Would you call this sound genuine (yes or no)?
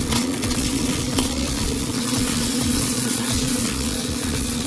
no